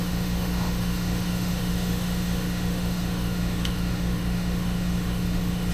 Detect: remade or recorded remade